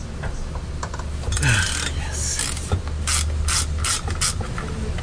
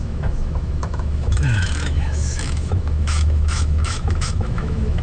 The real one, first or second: first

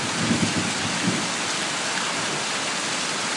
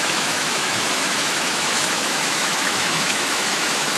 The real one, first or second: first